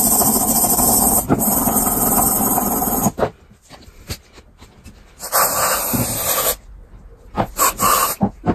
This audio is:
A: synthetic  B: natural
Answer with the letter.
B